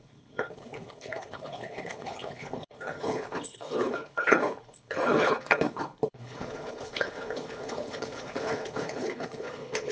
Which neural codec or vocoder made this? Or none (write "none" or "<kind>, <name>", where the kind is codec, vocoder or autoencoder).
codec, HILCodec